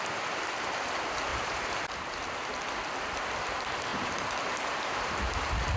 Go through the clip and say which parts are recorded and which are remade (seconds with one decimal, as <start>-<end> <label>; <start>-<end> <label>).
0.0-1.3 recorded; 1.3-2.4 remade; 2.4-3.9 recorded; 3.9-5.1 remade; 5.1-5.8 recorded